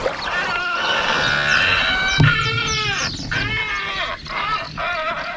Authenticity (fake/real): real